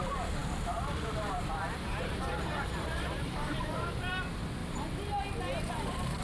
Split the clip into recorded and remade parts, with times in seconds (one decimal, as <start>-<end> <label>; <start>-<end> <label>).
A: 0.0-4.6 remade; 4.6-5.7 recorded; 5.7-6.2 remade